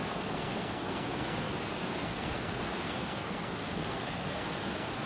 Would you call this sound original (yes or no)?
no